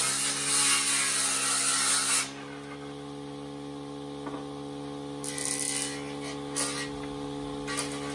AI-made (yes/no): no